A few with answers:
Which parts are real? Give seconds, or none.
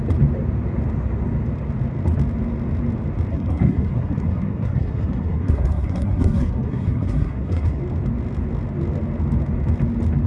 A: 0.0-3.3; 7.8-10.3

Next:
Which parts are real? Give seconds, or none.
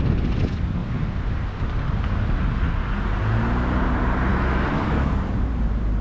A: 0.0-4.3; 5.1-6.0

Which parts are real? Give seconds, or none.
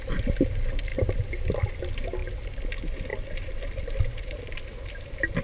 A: 0.0-0.9; 1.7-5.4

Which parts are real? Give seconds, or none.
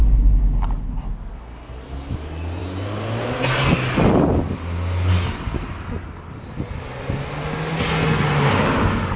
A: 0.0-9.2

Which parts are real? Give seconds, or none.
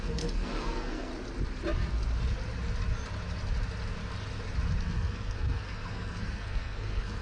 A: 1.1-4.8